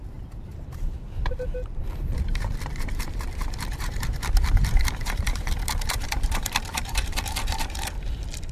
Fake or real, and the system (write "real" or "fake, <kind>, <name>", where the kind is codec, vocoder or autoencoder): fake, vocoder, BigVGAN v2